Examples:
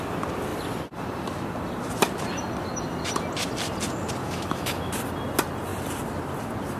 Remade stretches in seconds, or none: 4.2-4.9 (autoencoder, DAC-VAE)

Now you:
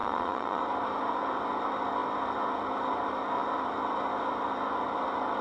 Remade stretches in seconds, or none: 0.0-0.6 (vocoder, Vocos)

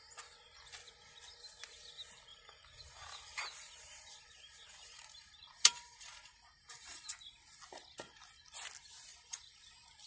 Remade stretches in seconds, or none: 2.3-7.0 (vocoder, BigVGAN v2); 9.1-9.6

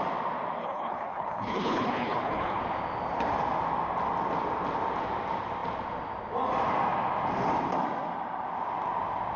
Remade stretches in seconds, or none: 0.6-2.6 (codec, HILCodec)